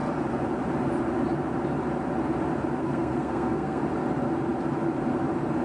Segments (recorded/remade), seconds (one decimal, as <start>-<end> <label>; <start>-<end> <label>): 0.0-2.8 recorded; 2.8-3.8 remade; 3.8-5.6 recorded